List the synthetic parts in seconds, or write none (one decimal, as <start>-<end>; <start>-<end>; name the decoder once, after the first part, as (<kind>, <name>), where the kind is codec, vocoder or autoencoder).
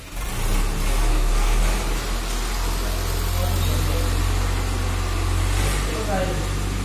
1.1-1.6 (codec, SNAC)